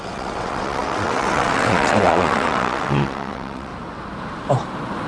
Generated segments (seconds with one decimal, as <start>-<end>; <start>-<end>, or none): 0.0-3.7